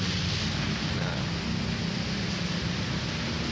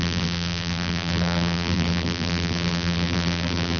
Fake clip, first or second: second